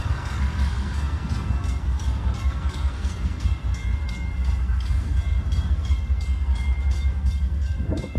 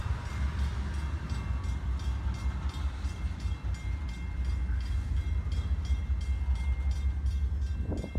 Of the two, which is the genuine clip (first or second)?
second